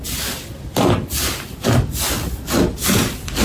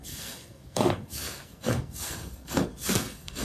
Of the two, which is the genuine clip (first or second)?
first